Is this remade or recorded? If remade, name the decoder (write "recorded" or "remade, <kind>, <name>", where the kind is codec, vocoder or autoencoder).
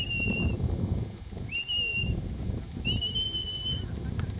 recorded